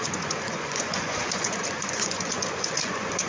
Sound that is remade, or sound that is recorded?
remade